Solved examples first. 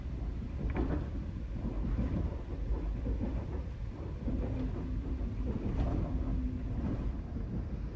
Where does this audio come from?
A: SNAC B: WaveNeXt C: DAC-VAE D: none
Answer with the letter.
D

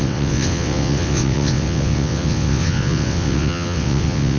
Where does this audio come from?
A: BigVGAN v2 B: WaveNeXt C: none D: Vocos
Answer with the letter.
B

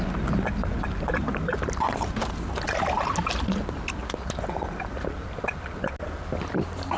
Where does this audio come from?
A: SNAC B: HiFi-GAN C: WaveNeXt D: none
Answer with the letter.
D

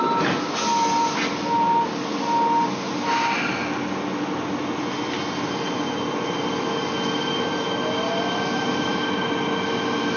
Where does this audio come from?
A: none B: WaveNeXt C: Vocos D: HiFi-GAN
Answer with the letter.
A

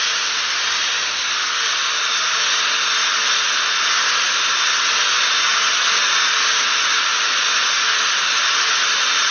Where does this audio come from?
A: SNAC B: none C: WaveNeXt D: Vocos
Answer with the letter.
B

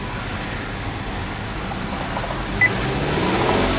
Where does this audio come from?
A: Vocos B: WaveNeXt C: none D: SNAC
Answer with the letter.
C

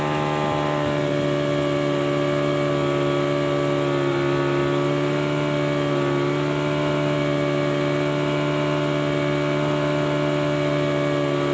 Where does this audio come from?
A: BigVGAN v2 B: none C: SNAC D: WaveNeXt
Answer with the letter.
B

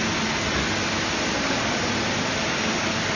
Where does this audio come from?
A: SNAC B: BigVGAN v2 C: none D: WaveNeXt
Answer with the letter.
C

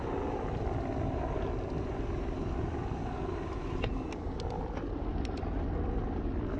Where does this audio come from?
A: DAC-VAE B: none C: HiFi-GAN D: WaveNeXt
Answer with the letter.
B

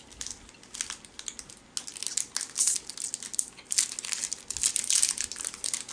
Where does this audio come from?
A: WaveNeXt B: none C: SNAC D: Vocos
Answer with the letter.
B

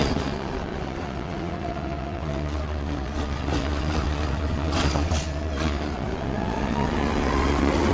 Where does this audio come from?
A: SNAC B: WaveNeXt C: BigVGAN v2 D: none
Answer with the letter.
B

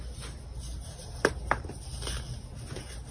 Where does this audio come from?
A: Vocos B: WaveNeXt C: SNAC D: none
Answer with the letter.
D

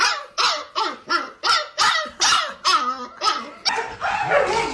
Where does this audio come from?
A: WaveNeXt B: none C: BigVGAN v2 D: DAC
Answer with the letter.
B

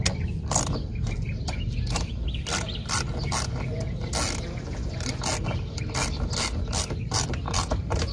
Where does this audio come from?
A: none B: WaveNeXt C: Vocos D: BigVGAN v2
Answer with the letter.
A